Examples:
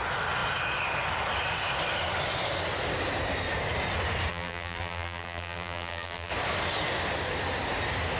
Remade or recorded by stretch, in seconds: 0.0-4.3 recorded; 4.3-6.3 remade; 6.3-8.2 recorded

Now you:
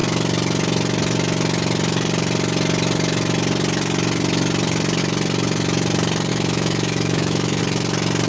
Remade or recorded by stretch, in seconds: 0.0-6.3 recorded; 6.3-7.6 remade; 7.6-8.3 recorded

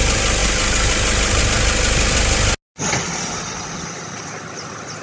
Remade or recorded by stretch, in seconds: 0.0-5.0 recorded

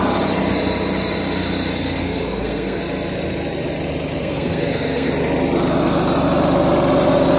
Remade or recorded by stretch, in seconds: 0.0-2.0 recorded; 2.0-2.8 remade; 2.8-4.2 recorded; 4.2-5.1 remade; 5.1-7.4 recorded